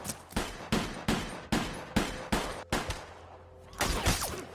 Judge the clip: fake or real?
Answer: real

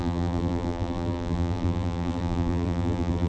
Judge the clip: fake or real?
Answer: fake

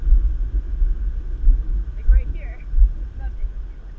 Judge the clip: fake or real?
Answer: real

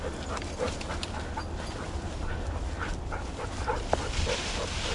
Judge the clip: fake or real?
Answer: real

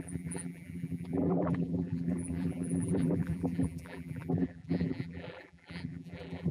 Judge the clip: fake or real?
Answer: fake